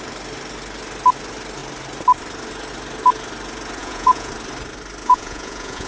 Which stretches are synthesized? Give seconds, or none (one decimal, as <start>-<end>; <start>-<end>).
3.8-4.3; 5.0-5.9